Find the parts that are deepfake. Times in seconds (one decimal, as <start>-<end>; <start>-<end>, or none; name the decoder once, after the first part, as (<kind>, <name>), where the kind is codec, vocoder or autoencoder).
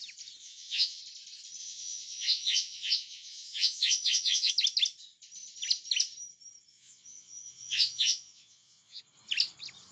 0.4-1.0 (vocoder, Vocos); 1.6-4.5; 6.7-9.0